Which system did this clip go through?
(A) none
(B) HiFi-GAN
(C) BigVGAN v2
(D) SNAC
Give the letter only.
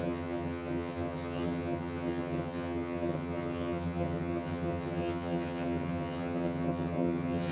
B